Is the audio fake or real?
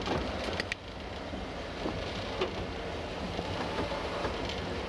real